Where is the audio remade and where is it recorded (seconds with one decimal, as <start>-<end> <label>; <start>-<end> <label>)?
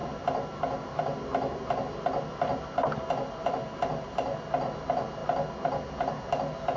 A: 0.0-6.8 recorded